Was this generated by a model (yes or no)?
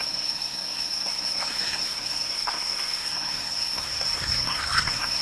yes